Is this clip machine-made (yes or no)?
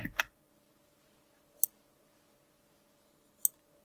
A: no